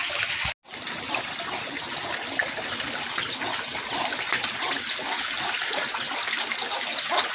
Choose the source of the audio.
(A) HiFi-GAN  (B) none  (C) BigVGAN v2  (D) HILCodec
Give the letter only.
B